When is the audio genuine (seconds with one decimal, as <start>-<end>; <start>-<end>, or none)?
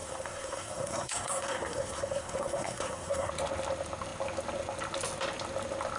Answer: 3.3-6.0